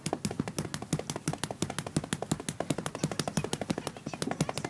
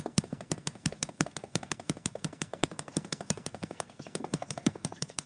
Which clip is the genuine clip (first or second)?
first